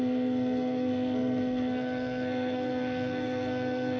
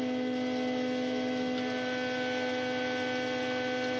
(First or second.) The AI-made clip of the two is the first